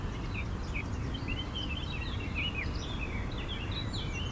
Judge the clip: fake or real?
real